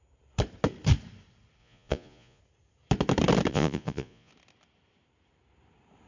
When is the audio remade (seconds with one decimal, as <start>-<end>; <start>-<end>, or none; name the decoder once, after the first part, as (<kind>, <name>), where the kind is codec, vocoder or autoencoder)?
1.6-2.4 (vocoder, Vocos); 3.5-4.3